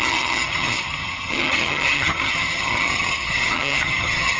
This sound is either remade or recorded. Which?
remade